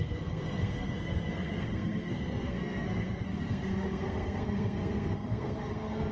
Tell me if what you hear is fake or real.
fake